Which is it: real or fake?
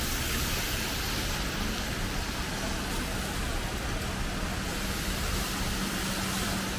real